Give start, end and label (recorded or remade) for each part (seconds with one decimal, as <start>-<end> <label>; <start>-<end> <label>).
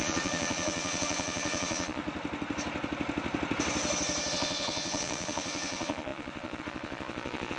0.0-2.0 remade; 2.0-4.3 recorded; 4.3-7.6 remade